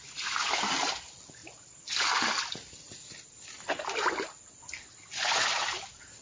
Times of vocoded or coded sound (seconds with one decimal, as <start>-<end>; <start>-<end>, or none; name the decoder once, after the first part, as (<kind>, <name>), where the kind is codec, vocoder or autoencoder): none